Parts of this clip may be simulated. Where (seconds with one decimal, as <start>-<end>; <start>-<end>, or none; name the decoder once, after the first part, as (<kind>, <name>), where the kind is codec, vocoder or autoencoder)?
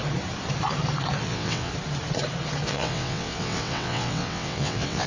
1.2-1.7 (vocoder, WaveNeXt); 2.7-5.1